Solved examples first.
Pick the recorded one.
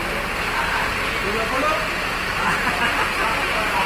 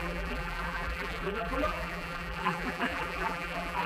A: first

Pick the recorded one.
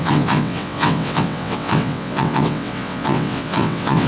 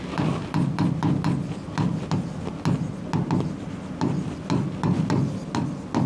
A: second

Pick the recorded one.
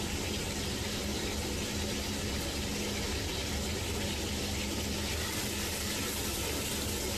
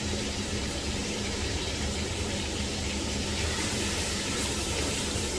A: first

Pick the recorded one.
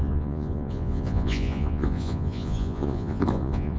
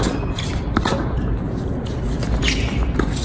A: second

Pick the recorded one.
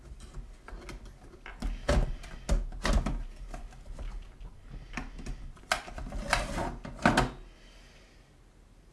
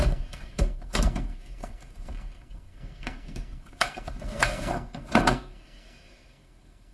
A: first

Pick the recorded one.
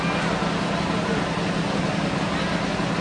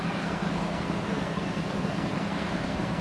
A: first